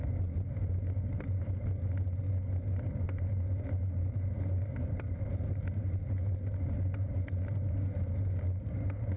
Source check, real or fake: real